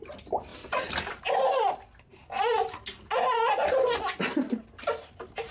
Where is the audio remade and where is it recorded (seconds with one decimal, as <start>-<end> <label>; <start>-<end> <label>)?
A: 0.0-5.5 recorded